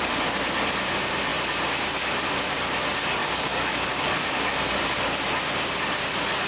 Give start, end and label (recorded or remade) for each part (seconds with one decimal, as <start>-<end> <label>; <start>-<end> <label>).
0.0-3.2 recorded; 3.2-4.8 remade; 4.8-6.5 recorded